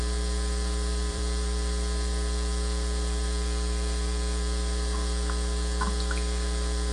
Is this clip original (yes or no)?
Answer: no